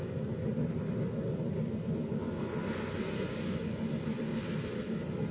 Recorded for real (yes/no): yes